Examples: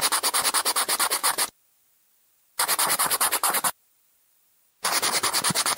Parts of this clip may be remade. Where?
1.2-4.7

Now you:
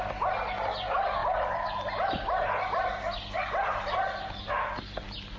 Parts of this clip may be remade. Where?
none

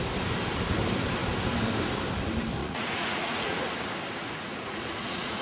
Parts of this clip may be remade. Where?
2.6-3.6; 4.2-5.4

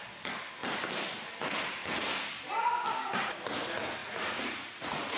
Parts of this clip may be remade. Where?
4.0-5.2

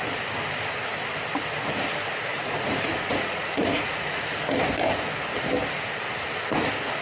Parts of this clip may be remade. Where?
2.3-4.2